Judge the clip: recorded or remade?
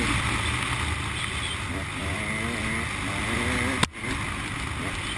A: recorded